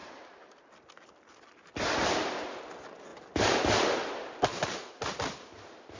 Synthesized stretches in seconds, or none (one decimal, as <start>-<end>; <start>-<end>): none